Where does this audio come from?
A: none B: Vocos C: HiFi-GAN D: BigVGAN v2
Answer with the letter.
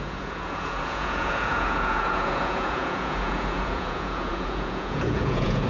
B